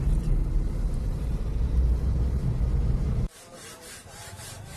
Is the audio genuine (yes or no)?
no